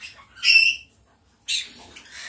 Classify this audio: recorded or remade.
recorded